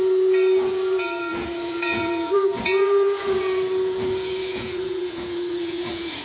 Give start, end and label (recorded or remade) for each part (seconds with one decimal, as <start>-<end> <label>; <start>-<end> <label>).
0.0-6.2 remade